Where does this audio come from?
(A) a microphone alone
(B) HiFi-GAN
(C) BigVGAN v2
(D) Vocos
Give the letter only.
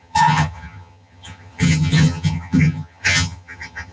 B